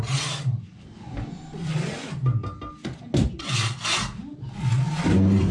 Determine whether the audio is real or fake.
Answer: real